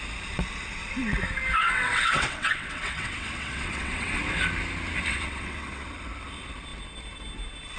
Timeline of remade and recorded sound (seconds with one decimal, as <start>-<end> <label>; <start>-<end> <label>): 0.0-1.6 recorded; 1.6-4.2 remade; 4.2-5.1 recorded; 5.1-5.9 remade; 5.9-7.8 recorded